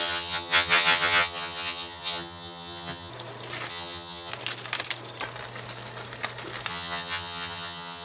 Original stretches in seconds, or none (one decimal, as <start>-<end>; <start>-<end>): 3.1-3.7; 4.3-6.7